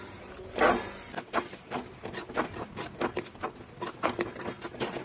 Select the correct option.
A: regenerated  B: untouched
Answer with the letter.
B